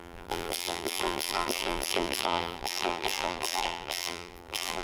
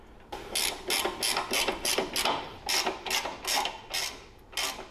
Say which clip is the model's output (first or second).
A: first